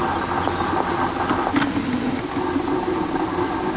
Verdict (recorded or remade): recorded